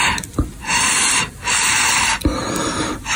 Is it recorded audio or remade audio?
recorded